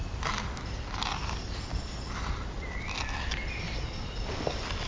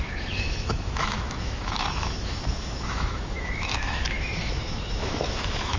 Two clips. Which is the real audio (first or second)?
first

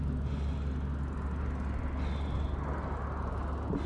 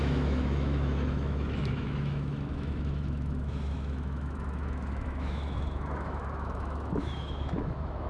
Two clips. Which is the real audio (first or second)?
first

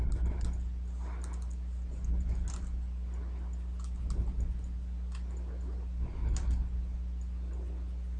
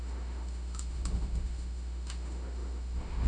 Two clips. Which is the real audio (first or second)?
first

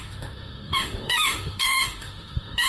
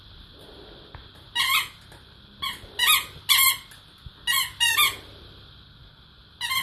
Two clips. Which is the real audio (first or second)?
second